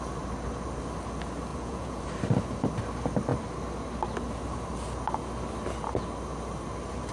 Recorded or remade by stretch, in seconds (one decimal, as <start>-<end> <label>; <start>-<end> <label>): 0.0-1.5 recorded; 1.5-2.0 remade; 2.0-7.1 recorded